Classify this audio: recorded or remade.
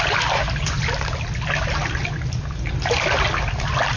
recorded